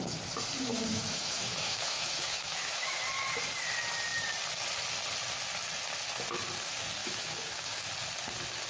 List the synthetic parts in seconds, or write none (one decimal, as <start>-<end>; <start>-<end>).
0.7-3.0; 7.0-7.9